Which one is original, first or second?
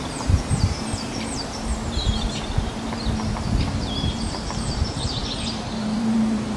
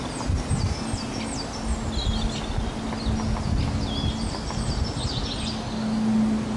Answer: second